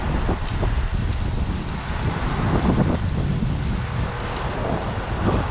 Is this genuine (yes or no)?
yes